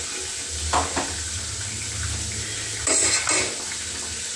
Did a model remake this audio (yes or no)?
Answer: no